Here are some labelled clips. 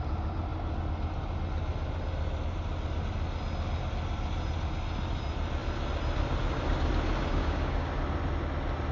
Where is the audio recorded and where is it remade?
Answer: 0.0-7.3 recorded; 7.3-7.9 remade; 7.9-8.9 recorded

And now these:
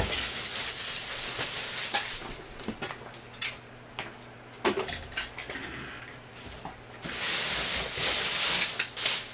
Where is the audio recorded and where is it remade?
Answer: 0.0-9.3 recorded

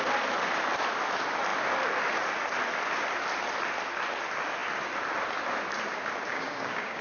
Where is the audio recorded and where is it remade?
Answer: 0.0-6.3 recorded; 6.3-7.0 remade

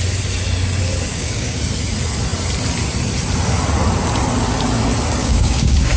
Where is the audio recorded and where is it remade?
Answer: 0.0-1.1 recorded; 1.1-1.6 remade; 1.6-5.2 recorded; 5.2-6.0 remade

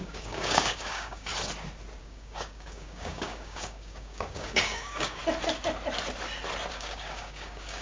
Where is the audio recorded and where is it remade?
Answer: 0.0-1.3 remade; 1.3-2.0 recorded; 2.0-5.2 remade; 5.2-6.7 recorded; 6.7-7.8 remade

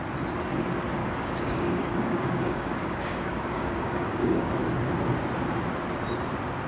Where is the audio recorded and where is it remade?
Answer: 0.0-1.0 recorded; 1.0-4.5 remade; 4.5-6.7 recorded